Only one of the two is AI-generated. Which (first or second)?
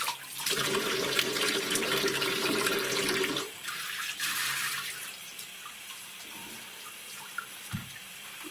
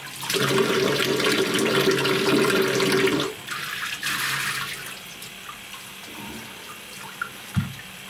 first